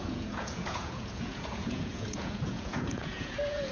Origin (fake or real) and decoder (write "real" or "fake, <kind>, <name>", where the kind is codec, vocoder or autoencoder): fake, vocoder, Vocos